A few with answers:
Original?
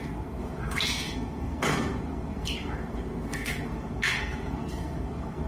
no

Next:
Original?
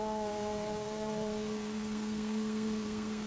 no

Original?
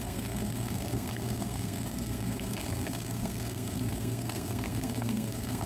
no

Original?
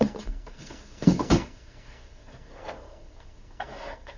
no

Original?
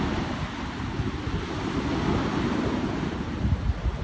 yes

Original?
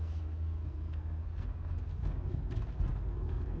no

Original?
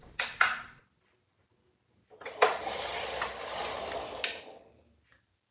yes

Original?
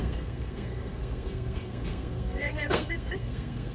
no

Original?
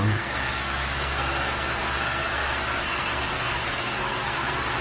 no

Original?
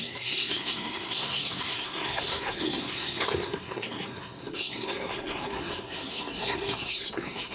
no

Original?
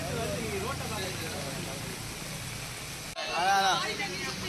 yes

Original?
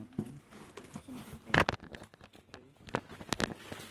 yes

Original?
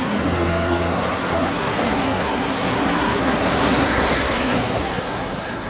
no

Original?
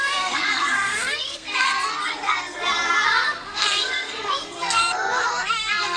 no